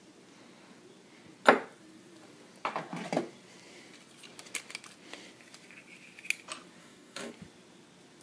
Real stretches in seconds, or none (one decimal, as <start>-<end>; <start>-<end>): 0.0-6.8; 7.3-8.2